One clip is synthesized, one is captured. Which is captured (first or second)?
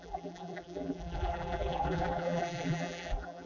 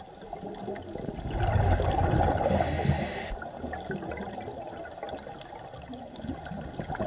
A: second